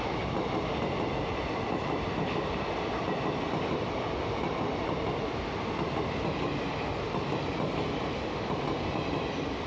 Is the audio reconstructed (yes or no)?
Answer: no